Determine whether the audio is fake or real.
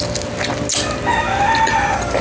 real